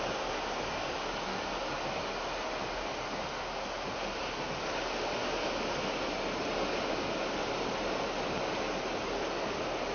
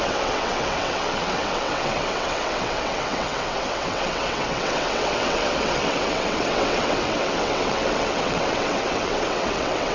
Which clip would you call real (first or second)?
first